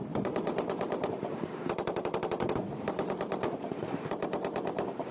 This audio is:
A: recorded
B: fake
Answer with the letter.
B